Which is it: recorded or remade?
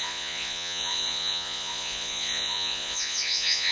remade